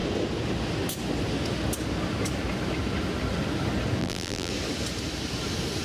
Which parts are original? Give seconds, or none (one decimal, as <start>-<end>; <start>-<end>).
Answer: 0.0-4.0; 4.5-5.8